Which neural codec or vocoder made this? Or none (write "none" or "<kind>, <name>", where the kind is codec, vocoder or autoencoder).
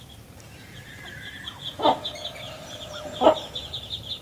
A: none